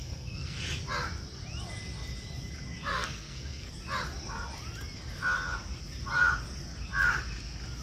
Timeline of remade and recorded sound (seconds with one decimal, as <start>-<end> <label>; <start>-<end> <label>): 0.0-0.6 remade; 0.6-2.9 recorded; 2.9-3.7 remade; 3.7-7.8 recorded